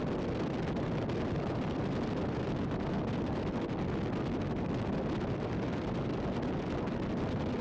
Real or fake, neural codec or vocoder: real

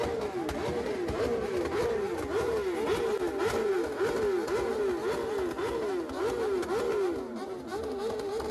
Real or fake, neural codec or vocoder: real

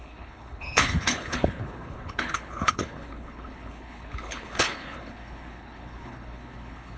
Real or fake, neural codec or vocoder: fake, codec, HILCodec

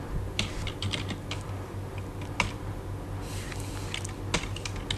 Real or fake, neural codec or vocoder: real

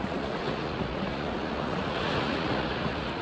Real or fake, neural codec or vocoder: fake, vocoder, Vocos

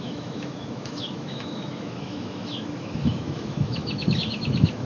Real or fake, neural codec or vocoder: fake, autoencoder, DAC-VAE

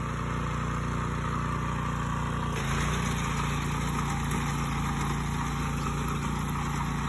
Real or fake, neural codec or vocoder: real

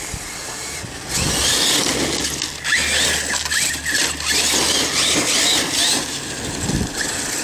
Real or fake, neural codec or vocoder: real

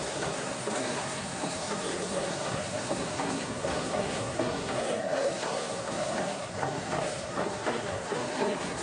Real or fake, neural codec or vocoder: fake, codec, SNAC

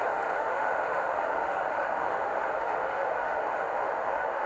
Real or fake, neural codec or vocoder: fake, autoencoder, DAC-VAE